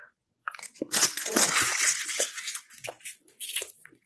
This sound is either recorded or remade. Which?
remade